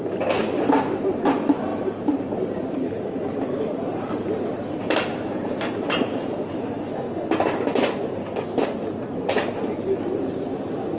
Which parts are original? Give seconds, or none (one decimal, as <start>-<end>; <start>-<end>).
0.0-1.7; 6.7-11.0